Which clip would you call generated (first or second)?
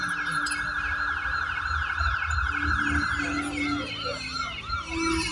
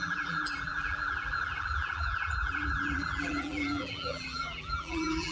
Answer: second